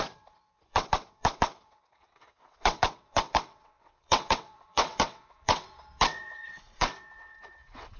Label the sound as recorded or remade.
remade